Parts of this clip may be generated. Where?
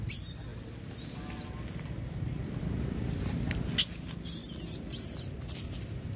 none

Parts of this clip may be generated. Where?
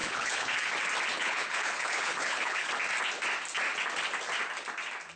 0.0-0.7 (codec, HILCodec); 1.1-2.7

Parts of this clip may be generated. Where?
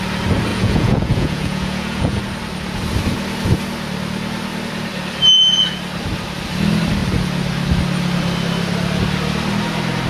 0.5-2.2 (vocoder, Vocos)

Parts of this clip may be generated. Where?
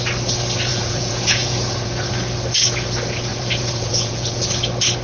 0.7-2.1 (vocoder, Vocos); 3.3-4.6